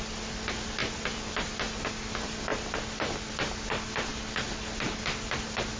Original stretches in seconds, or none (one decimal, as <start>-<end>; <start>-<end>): 0.0-5.8